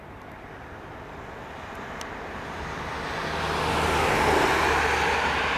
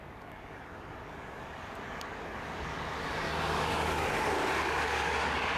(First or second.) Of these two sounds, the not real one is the second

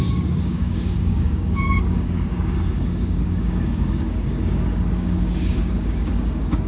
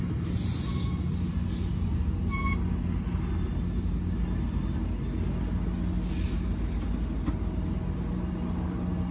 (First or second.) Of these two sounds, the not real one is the first